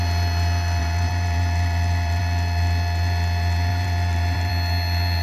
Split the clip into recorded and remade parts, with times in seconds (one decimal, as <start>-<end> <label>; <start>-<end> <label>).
0.0-0.8 recorded; 0.8-2.2 remade; 2.2-3.7 recorded; 3.7-4.5 remade; 4.5-5.2 recorded